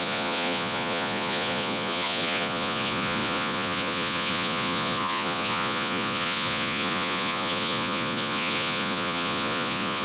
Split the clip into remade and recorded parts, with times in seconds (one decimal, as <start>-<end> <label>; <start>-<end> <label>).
0.0-10.0 remade